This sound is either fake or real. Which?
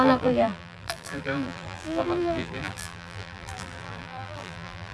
fake